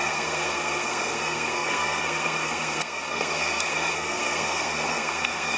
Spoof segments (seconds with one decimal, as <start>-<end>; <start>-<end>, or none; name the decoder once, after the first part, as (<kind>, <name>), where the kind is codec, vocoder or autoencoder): 0.0-5.6 (codec, SNAC)